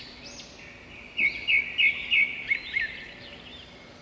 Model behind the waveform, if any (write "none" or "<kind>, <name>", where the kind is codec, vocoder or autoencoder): none